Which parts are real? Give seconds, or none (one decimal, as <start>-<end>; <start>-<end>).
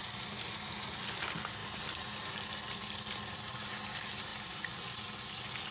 0.0-1.6; 2.2-5.7